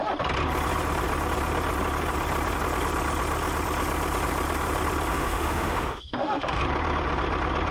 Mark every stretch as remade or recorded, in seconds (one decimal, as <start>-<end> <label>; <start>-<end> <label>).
0.0-5.1 recorded; 5.1-6.6 remade; 6.6-7.7 recorded